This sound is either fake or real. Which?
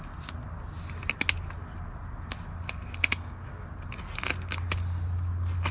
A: real